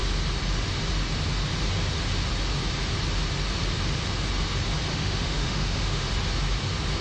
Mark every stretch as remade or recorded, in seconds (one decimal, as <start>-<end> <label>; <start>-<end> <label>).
0.0-4.9 recorded; 4.9-6.1 remade; 6.1-7.0 recorded